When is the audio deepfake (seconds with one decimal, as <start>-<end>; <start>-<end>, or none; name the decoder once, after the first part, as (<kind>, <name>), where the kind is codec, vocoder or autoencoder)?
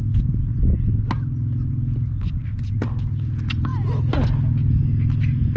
none